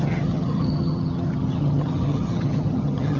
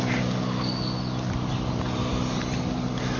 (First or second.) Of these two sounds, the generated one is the first